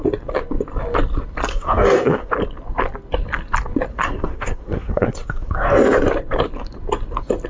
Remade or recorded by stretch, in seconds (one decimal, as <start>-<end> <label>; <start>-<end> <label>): 0.0-1.5 recorded; 1.5-2.3 remade; 2.3-3.9 recorded; 3.9-5.5 remade; 5.5-7.5 recorded